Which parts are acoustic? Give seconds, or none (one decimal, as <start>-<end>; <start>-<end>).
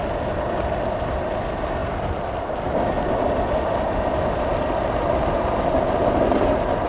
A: 0.0-6.9